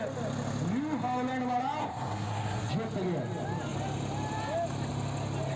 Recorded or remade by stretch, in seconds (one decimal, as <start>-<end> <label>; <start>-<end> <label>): 0.0-1.8 recorded; 1.8-2.7 remade; 2.7-5.6 recorded